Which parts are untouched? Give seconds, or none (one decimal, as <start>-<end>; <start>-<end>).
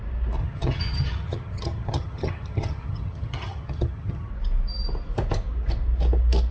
0.0-0.4; 4.3-6.5